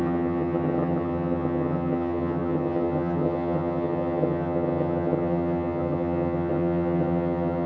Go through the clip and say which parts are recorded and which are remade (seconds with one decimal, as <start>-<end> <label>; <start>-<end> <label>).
0.0-7.7 remade